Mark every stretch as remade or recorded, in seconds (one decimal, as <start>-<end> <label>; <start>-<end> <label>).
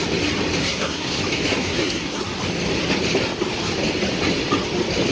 0.0-0.6 recorded; 0.6-1.2 remade; 1.2-1.6 recorded; 1.6-2.2 remade; 2.2-5.1 recorded